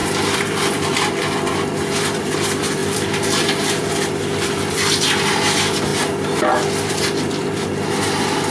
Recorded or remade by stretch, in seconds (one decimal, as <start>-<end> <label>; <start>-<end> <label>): 0.0-2.2 remade; 2.2-2.8 recorded; 2.8-3.9 remade; 3.9-8.5 recorded